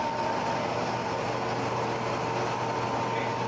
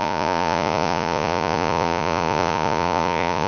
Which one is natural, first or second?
first